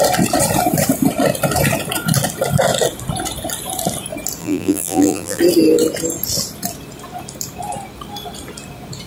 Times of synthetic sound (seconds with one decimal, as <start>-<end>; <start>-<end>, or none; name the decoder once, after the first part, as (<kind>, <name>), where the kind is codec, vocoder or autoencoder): 4.4-5.4 (vocoder, BigVGAN v2)